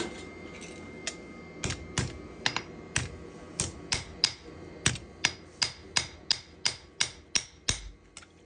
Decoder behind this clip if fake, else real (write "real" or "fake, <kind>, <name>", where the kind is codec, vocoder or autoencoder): real